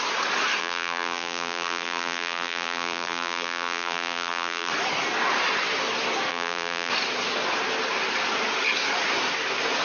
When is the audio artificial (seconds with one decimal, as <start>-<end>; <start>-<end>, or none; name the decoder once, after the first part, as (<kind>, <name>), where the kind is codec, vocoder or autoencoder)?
0.6-4.7 (vocoder, BigVGAN v2); 6.3-6.9